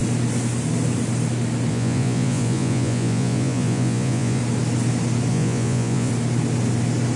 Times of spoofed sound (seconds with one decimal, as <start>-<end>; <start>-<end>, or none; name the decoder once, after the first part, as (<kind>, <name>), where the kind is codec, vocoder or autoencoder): 1.7-4.4 (vocoder, Vocos); 5.3-6.1